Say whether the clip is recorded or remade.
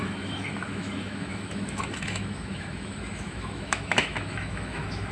remade